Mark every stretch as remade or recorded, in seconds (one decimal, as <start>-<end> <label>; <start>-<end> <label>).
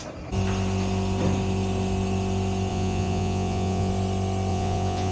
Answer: 0.0-2.7 recorded; 2.7-3.9 remade; 3.9-4.5 recorded; 4.5-5.1 remade